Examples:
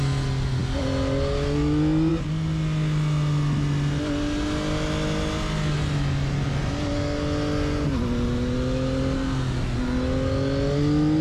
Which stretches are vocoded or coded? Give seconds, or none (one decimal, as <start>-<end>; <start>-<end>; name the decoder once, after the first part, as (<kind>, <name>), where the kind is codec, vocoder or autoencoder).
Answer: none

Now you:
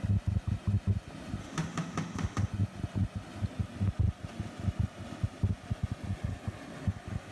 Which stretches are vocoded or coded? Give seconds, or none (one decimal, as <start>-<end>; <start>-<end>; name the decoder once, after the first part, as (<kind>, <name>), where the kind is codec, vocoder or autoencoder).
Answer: 1.4-2.5 (autoencoder, DAC-VAE)

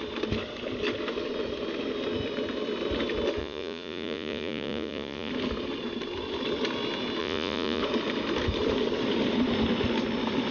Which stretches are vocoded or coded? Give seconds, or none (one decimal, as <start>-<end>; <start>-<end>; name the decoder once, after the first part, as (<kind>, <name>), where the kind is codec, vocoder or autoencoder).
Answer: 3.4-5.3 (vocoder, Vocos); 7.2-7.8

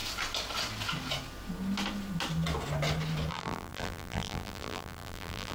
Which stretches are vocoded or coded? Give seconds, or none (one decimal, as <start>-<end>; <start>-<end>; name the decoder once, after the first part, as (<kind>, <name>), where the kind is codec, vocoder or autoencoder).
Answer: 3.3-5.5 (vocoder, BigVGAN v2)

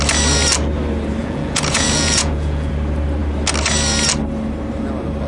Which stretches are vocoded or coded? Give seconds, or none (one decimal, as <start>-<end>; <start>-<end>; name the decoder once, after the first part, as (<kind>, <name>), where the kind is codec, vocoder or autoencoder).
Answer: 1.2-2.7 (vocoder, Vocos)

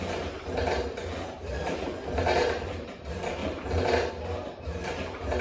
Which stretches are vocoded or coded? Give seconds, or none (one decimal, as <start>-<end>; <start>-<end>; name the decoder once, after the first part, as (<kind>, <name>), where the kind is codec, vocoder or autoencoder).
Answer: 1.5-2.9 (vocoder, BigVGAN v2); 3.4-4.1; 4.8-5.4

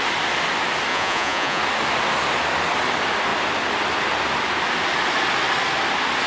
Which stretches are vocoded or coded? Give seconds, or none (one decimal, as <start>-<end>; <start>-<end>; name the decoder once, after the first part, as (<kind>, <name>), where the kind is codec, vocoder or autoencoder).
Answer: 0.9-1.6 (vocoder, Vocos)

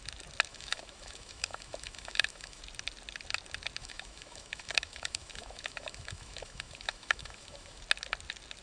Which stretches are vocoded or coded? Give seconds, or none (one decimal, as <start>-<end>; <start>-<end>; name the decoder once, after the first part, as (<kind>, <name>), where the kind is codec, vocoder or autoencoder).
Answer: 0.5-2.6 (autoencoder, DAC-VAE); 3.8-7.8